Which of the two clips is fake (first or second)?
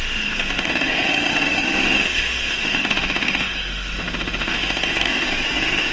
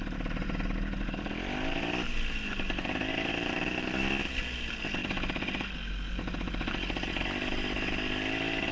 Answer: first